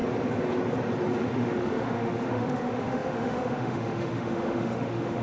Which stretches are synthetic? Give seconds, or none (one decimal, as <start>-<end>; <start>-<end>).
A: 1.3-5.2